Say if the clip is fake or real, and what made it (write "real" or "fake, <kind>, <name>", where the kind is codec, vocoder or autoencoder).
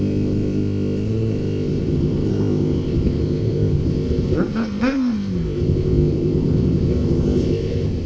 fake, codec, ZipCodec